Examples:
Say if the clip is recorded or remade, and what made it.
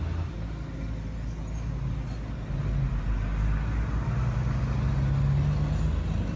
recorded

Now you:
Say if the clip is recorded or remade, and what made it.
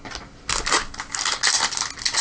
recorded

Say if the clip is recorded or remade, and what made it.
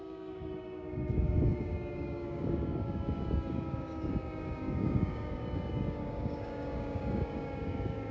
remade, codec, DAC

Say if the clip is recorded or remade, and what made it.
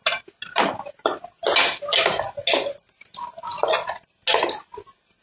recorded